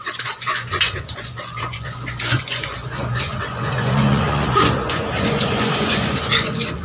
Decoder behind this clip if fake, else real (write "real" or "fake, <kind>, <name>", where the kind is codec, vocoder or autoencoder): fake, vocoder, Vocos